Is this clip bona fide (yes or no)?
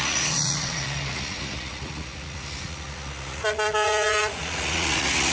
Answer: no